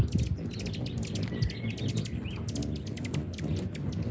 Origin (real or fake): real